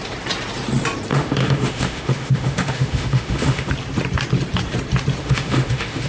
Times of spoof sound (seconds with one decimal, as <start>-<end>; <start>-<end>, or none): 1.1-3.7; 5.2-6.1